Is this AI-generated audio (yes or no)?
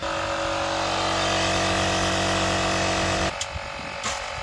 no